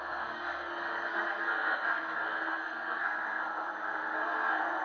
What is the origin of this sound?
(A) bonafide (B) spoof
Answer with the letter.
B